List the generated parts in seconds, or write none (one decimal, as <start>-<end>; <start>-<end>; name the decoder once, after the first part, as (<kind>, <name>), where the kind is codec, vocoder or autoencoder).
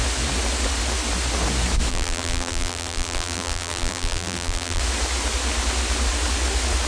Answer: 1.9-4.8 (vocoder, BigVGAN v2)